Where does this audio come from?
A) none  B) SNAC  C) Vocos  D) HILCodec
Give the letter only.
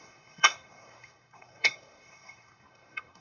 B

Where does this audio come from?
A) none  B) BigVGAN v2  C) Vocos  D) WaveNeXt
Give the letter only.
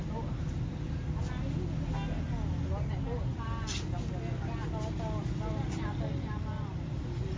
A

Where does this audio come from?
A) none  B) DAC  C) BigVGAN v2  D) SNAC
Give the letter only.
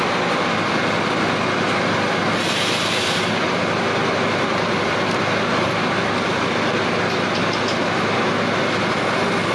A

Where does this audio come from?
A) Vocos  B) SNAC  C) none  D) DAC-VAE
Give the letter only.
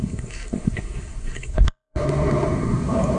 B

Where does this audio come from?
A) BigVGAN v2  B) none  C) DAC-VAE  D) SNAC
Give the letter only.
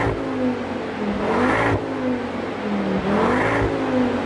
B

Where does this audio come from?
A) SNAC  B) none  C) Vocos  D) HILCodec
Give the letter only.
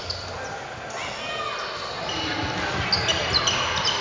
B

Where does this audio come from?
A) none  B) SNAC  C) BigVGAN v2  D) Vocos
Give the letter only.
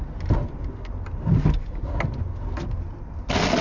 A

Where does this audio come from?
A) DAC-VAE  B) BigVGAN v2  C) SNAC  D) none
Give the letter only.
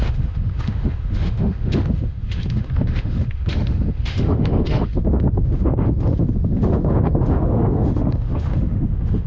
A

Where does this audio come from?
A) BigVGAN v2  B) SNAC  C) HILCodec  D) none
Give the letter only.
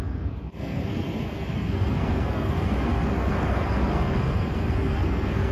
B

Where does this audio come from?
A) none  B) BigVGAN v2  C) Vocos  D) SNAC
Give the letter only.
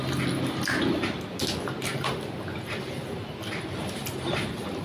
A